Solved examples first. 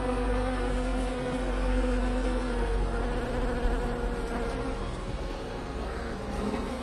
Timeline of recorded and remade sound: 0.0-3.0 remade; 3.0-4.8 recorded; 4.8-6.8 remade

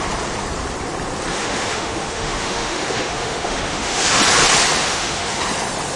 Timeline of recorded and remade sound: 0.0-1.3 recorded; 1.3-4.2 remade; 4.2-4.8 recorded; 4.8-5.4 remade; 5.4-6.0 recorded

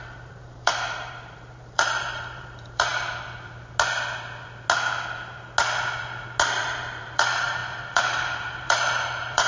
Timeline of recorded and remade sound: 0.0-2.9 remade; 2.9-6.6 recorded; 6.6-9.5 remade